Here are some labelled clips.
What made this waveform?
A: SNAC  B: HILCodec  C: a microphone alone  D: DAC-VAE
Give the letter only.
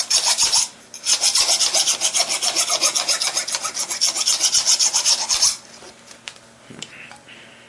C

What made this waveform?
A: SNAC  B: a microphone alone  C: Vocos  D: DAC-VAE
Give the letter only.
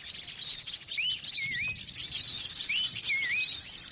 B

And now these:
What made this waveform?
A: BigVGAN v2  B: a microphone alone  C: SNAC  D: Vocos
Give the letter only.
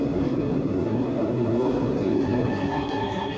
C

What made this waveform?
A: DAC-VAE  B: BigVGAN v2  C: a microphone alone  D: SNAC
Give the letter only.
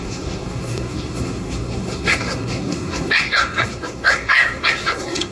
D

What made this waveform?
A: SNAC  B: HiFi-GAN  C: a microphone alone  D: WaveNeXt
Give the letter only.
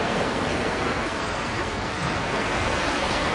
A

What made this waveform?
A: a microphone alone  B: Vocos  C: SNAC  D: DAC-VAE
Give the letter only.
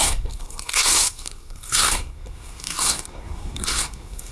C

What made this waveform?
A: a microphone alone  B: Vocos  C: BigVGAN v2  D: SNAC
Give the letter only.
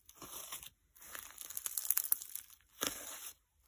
A